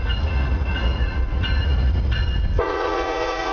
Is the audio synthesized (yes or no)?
yes